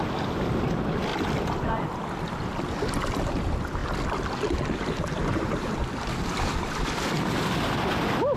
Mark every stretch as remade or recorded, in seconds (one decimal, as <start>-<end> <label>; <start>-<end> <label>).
0.0-1.1 recorded; 1.1-1.8 remade; 1.8-8.4 recorded